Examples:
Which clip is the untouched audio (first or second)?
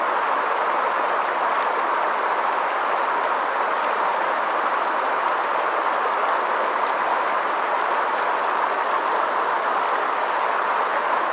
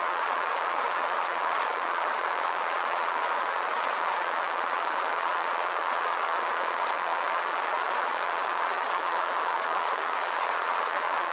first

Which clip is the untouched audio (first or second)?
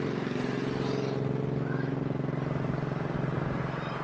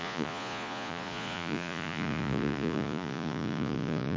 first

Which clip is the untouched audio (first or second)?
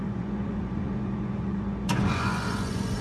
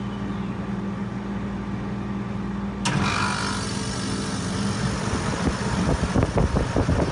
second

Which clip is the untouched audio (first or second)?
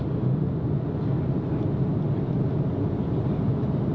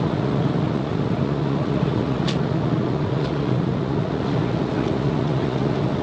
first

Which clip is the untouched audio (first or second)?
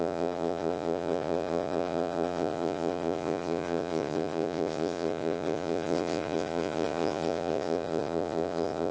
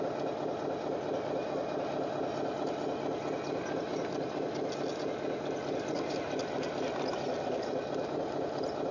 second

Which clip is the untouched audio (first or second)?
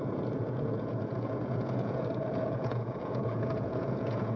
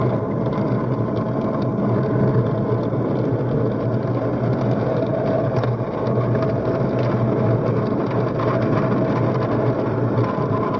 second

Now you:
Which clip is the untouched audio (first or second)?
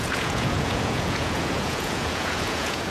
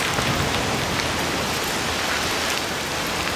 second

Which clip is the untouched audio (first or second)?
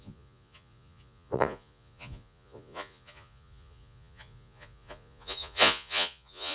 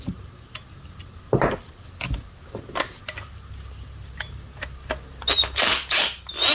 second